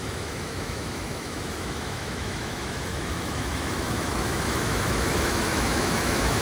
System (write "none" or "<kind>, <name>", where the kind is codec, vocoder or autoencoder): autoencoder, DAC-VAE